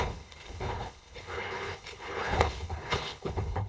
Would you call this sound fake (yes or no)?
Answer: yes